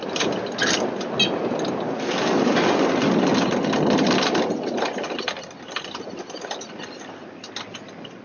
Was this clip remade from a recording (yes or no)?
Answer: no